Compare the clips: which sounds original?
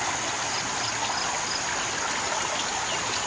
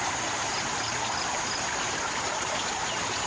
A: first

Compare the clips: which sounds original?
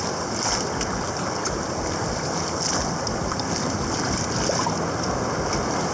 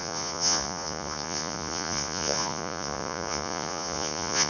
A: first